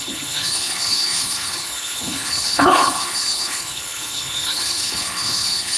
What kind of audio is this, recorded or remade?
remade